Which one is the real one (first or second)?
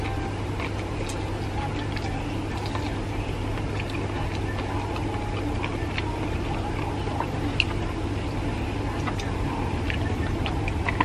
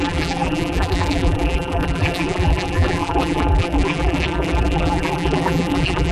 first